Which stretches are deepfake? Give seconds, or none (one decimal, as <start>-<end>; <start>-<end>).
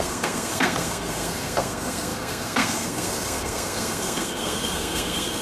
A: 0.0-5.4